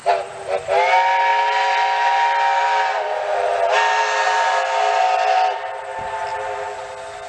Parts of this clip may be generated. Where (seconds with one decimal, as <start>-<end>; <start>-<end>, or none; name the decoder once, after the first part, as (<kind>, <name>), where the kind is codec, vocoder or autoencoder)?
none